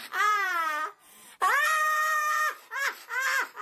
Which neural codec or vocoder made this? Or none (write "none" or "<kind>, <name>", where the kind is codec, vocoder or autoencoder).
vocoder, BigVGAN v2